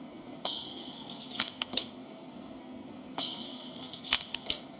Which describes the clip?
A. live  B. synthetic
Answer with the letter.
B